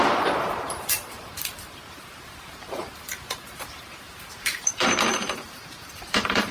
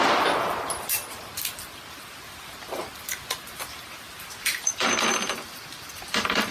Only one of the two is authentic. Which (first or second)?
second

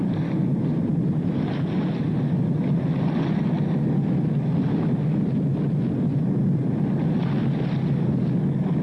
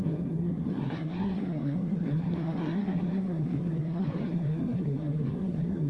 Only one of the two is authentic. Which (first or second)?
first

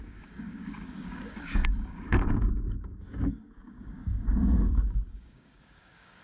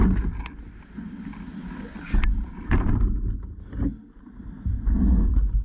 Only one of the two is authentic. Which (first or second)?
second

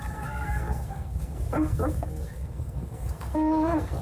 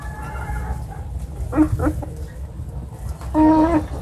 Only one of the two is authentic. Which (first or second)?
second